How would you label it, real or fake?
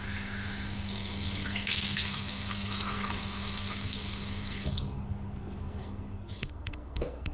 fake